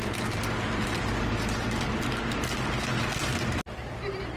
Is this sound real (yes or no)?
yes